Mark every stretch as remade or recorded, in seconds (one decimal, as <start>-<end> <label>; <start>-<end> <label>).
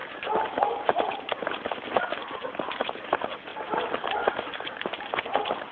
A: 0.0-5.7 recorded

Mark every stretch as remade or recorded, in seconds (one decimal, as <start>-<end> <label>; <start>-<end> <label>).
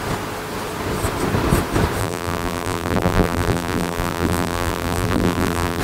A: 0.0-2.0 recorded; 2.0-5.8 remade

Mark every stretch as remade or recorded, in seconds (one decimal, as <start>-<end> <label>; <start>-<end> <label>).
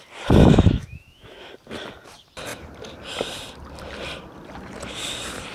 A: 0.0-0.4 recorded; 0.4-1.5 remade; 1.5-5.5 recorded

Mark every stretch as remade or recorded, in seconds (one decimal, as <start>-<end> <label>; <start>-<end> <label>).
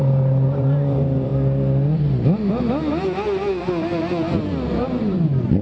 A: 0.0-1.3 remade; 1.3-4.7 recorded; 4.7-5.6 remade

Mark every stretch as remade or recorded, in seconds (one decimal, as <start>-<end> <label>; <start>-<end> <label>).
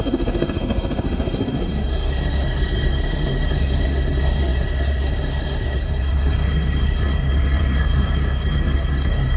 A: 0.0-9.4 remade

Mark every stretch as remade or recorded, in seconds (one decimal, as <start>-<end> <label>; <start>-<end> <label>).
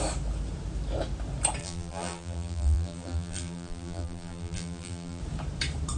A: 0.0-1.6 recorded; 1.6-5.2 remade; 5.2-6.0 recorded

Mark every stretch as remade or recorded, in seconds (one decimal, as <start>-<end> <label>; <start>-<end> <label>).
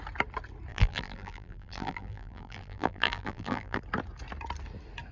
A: 0.0-0.7 recorded; 0.7-3.8 remade; 3.8-5.1 recorded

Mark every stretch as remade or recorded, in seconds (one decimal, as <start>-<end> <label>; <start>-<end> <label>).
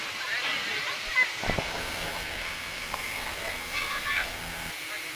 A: 0.0-1.6 recorded; 1.6-4.7 remade; 4.7-5.2 recorded